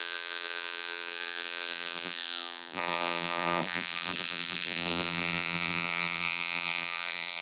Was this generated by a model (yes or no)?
yes